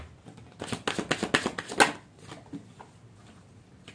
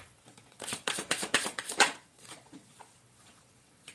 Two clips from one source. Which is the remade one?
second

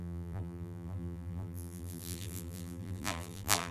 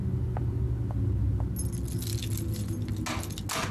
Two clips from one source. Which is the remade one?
first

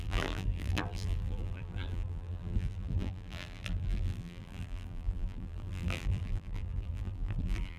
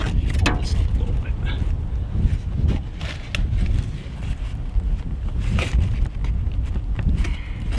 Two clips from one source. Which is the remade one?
first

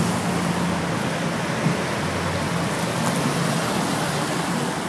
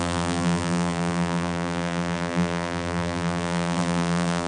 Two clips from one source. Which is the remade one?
second